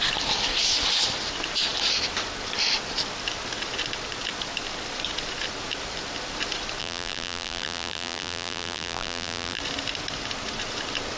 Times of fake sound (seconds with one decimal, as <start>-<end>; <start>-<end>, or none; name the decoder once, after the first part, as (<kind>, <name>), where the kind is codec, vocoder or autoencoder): 6.8-9.6 (vocoder, BigVGAN v2)